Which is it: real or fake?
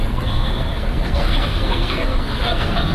fake